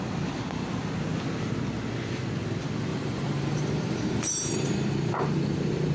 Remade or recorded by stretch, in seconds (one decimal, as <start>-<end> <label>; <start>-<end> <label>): 0.0-2.9 recorded; 2.9-5.9 remade